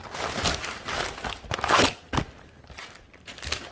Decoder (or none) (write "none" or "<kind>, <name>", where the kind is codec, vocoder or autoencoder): none